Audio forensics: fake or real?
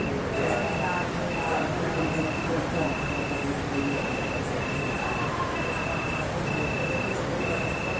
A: real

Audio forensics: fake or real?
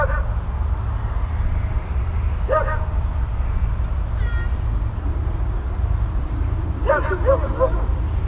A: real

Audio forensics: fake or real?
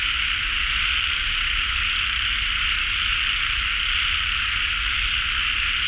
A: real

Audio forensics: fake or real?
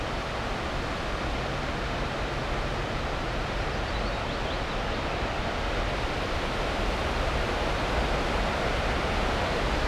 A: real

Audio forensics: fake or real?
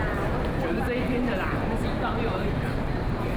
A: fake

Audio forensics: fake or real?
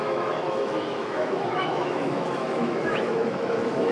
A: fake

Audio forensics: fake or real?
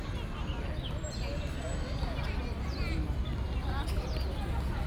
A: real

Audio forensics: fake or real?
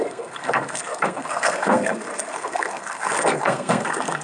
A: fake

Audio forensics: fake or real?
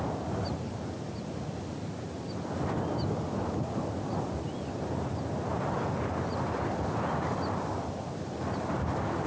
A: real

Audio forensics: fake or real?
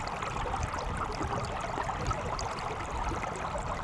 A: real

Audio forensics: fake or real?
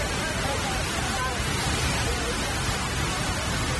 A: real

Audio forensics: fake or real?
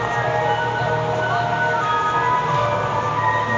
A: real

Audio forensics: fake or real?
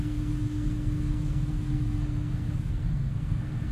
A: fake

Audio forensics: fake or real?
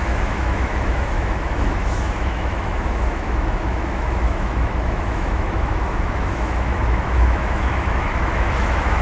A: fake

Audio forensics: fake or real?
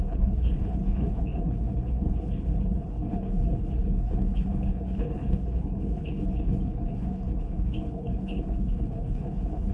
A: fake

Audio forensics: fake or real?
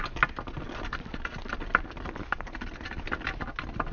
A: real